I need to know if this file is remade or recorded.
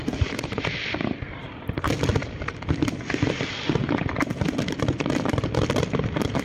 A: recorded